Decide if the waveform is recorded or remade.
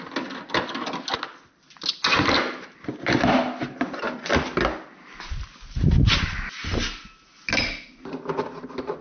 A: recorded